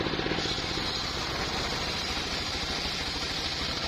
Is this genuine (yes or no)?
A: no